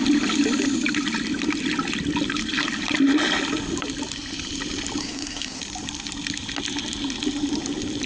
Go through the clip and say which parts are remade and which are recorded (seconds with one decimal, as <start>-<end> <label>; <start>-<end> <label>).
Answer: 0.0-5.0 recorded; 5.0-5.6 remade; 5.6-8.1 recorded